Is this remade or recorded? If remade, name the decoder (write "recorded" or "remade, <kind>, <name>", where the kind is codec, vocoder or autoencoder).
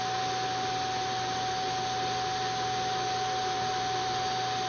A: recorded